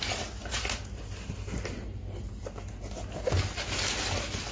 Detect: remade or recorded recorded